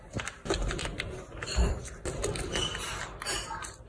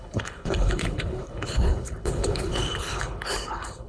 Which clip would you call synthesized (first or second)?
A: second